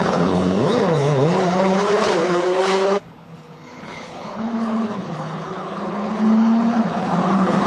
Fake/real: fake